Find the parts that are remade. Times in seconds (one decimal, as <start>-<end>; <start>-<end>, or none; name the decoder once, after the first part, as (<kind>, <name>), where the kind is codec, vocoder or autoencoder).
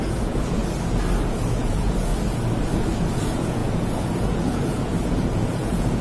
0.0-0.6 (vocoder, Vocos); 1.3-2.1; 3.0-6.0